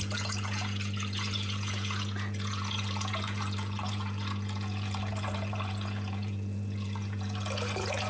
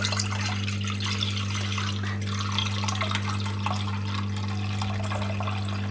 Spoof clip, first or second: first